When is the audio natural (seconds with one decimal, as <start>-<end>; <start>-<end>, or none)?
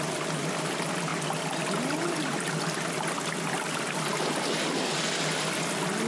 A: 0.0-6.1